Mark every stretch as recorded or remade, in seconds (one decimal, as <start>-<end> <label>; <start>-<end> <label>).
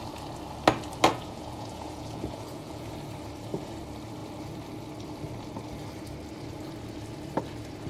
0.0-1.1 recorded; 1.1-2.9 remade; 2.9-7.9 recorded